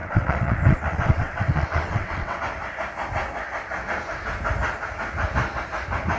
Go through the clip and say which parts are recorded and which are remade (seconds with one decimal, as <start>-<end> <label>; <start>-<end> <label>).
0.0-2.4 remade; 2.4-6.2 recorded